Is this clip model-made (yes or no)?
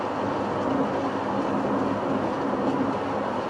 no